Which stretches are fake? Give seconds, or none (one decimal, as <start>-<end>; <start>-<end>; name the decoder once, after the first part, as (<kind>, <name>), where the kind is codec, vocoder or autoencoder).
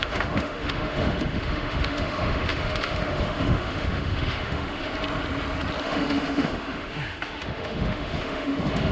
0.0-4.9 (autoencoder, DAC-VAE); 5.8-8.9